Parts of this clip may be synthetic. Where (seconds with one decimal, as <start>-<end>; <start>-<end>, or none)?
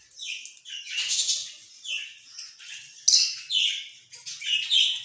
none